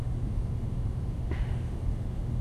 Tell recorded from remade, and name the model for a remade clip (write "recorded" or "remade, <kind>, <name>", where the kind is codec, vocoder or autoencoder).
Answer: remade, autoencoder, DAC-VAE